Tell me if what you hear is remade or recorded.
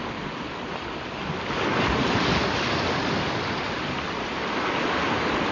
recorded